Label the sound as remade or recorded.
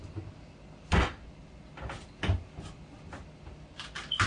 recorded